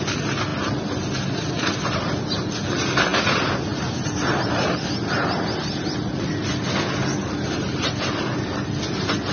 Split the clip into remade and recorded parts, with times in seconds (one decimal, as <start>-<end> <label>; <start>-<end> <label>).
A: 0.0-9.3 recorded